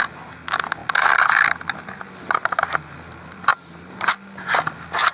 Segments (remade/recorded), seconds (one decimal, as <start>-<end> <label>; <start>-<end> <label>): 0.0-5.1 recorded